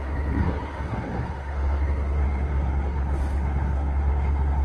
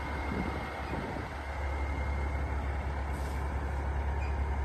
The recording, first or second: second